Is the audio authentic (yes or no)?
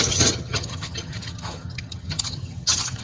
no